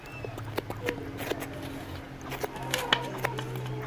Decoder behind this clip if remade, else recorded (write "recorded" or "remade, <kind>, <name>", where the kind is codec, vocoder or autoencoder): recorded